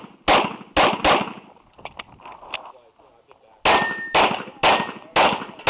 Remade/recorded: recorded